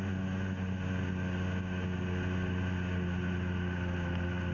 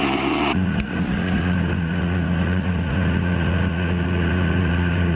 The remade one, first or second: second